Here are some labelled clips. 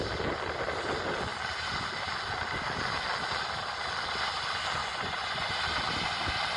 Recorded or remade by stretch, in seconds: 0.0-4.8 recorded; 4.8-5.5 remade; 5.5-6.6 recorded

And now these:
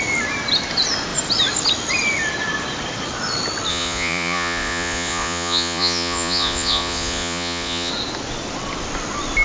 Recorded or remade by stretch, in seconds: 0.0-3.7 recorded; 3.7-7.9 remade; 7.9-9.4 recorded

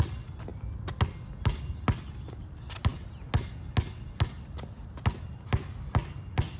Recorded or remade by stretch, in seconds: 0.0-6.6 recorded

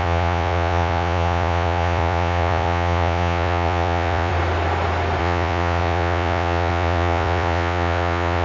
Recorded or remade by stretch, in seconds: 0.0-4.3 remade; 4.3-5.2 recorded; 5.2-8.4 remade

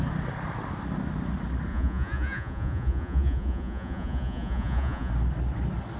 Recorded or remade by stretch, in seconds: 0.0-1.7 recorded; 1.7-5.1 remade; 5.1-6.0 recorded